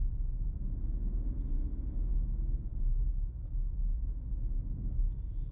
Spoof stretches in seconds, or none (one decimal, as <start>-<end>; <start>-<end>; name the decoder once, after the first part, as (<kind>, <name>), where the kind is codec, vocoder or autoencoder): none